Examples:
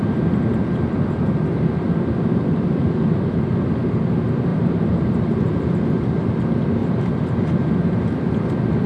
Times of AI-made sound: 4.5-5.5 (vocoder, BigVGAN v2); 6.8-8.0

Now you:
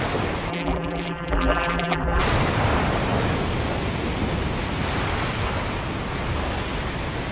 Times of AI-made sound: 0.5-2.2 (vocoder, BigVGAN v2)

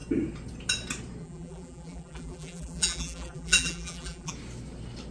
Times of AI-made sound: 1.2-4.3 (vocoder, BigVGAN v2)

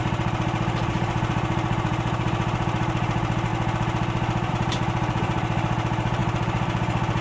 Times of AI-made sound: 0.0-3.5 (vocoder, BigVGAN v2); 4.5-7.2

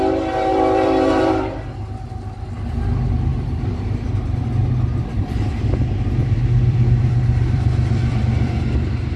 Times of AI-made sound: 0.5-1.3 (vocoder, BigVGAN v2); 6.2-9.2

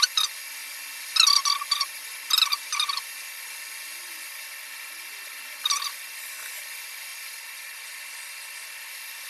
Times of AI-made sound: 7.1-7.9 (vocoder, BigVGAN v2)

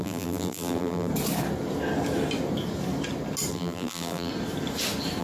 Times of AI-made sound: 0.0-1.1 (vocoder, BigVGAN v2); 3.5-4.3

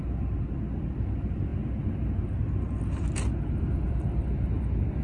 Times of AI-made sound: none